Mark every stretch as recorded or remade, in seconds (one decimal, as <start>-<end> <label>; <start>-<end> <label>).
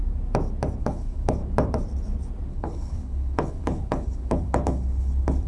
0.0-0.8 recorded; 0.8-1.4 remade; 1.4-2.5 recorded; 2.5-5.5 remade